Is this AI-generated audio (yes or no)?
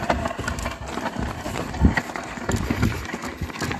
no